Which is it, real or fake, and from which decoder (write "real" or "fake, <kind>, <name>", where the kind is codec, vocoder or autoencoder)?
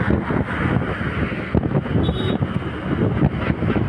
real